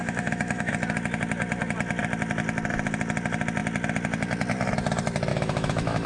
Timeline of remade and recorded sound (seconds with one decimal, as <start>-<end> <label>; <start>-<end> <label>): 0.0-0.7 remade; 0.7-5.3 recorded; 5.3-6.1 remade

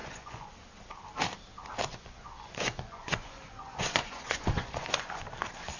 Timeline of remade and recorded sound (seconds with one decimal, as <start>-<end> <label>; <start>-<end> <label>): 0.0-0.5 remade; 0.5-1.9 recorded; 1.9-5.2 remade; 5.2-5.8 recorded

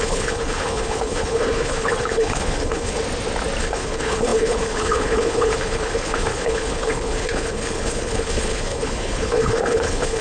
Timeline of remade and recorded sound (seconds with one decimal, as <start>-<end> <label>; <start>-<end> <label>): 0.0-3.0 remade; 3.0-3.6 recorded; 3.6-10.2 remade

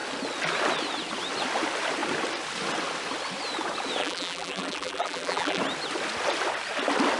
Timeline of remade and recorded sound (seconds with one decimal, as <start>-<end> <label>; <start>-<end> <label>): 0.0-4.0 recorded; 4.0-5.6 remade; 5.6-7.2 recorded

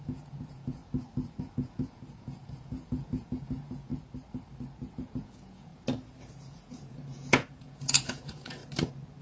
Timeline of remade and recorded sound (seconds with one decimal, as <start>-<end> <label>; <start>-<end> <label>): 0.0-0.8 remade; 0.8-1.4 recorded; 1.4-3.9 remade; 3.9-4.9 recorded; 4.9-5.7 remade; 5.7-6.3 recorded; 6.3-8.6 remade; 8.6-9.2 recorded

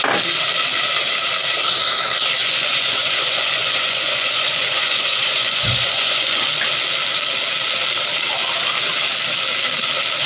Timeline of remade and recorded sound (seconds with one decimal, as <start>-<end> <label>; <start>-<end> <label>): 0.0-2.4 recorded; 2.4-6.5 remade; 6.5-10.3 recorded

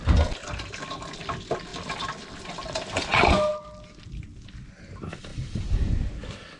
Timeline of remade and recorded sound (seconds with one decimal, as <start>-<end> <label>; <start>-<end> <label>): 0.0-5.3 recorded; 5.3-6.1 remade; 6.1-6.6 recorded

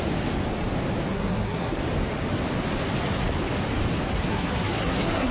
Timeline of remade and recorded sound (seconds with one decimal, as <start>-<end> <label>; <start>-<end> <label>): 0.0-1.1 recorded; 1.1-1.8 remade; 1.8-4.3 recorded; 4.3-5.3 remade